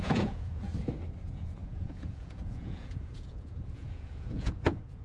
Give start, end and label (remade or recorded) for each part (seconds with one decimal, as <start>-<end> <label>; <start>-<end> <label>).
0.0-0.7 remade; 0.7-1.2 recorded; 1.2-5.0 remade